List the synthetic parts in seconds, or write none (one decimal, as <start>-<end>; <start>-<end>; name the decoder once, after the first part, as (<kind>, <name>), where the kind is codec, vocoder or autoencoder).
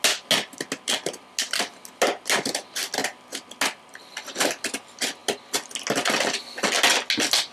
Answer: none